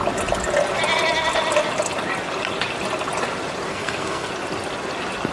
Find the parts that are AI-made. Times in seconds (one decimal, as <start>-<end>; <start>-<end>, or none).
3.7-4.3